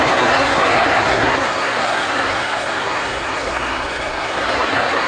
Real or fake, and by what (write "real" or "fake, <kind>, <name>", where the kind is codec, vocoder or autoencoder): fake, codec, SNAC